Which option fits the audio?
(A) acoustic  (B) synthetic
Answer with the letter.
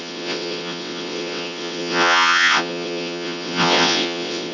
B